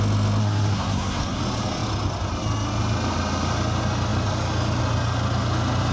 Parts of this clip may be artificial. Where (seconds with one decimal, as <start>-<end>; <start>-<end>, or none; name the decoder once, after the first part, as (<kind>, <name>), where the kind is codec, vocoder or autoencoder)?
0.4-1.4 (codec, SNAC)